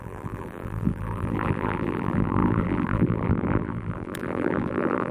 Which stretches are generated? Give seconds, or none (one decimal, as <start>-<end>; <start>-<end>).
0.0-5.1